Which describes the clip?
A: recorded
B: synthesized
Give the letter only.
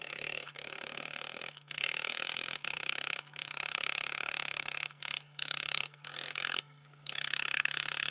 B